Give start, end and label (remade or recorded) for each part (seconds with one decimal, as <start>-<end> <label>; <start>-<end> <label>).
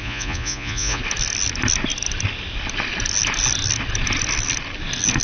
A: 0.0-1.0 remade; 1.0-5.2 recorded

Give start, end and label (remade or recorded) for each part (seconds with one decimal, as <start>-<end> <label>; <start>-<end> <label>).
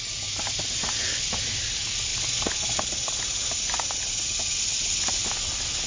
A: 0.0-5.9 recorded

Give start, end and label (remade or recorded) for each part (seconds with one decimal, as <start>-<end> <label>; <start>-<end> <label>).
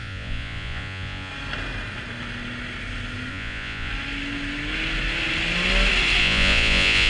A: 0.0-1.3 remade; 1.3-3.3 recorded; 3.3-3.9 remade; 3.9-6.2 recorded; 6.2-7.1 remade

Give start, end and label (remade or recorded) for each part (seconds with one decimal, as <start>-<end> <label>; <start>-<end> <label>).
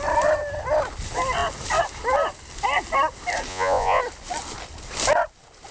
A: 0.0-3.5 recorded; 3.5-4.0 remade; 4.0-5.7 recorded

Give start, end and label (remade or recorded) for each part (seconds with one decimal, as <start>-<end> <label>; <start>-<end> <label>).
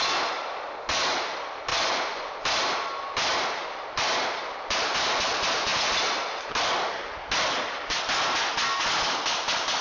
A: 0.0-1.7 recorded; 1.7-2.3 remade; 2.3-9.8 recorded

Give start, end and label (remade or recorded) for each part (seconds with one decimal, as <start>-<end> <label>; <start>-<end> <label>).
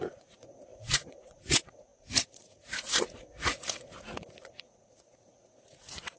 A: 0.0-6.2 remade